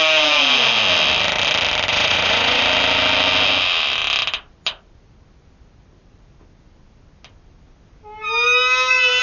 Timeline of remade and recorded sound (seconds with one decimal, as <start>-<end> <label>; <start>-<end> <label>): 0.0-1.9 recorded; 1.9-2.6 remade; 2.6-9.2 recorded